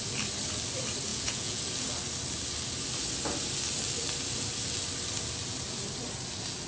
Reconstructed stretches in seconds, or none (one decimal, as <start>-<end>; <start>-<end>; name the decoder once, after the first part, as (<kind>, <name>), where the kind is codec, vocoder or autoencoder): 1.1-1.6 (vocoder, Vocos)